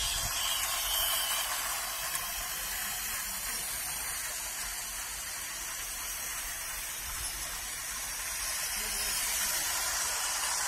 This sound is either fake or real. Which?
real